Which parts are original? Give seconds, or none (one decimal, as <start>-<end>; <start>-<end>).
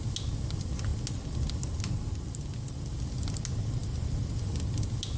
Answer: 0.0-5.2